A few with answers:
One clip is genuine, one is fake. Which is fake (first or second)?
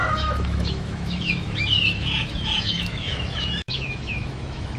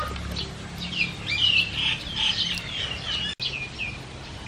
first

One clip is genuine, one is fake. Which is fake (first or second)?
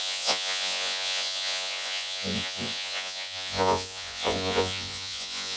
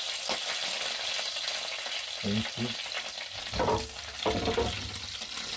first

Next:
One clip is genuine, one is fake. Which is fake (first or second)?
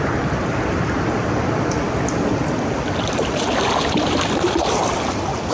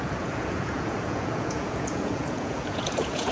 second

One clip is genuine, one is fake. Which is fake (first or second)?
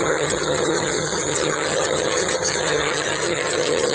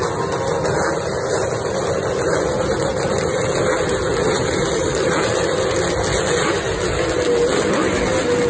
first